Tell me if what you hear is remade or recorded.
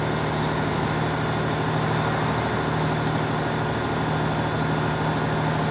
recorded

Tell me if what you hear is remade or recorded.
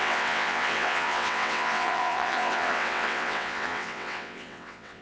remade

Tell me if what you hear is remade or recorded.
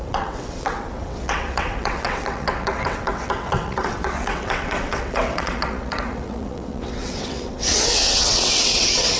remade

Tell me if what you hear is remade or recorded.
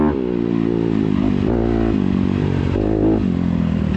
recorded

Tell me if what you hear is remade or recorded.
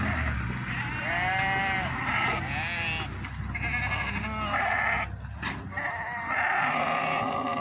recorded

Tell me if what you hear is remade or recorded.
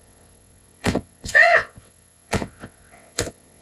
remade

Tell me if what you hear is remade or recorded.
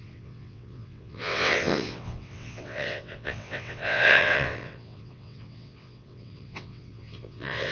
remade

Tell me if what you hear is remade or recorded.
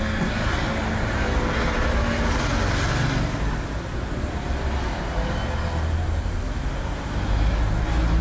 recorded